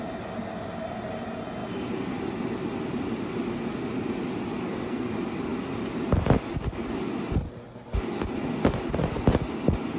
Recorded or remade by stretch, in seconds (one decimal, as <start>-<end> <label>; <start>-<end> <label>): 0.0-4.6 recorded; 4.6-5.1 remade; 5.1-10.0 recorded